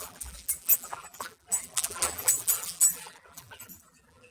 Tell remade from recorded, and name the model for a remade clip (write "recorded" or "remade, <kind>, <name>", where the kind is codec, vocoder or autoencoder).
remade, vocoder, BigVGAN v2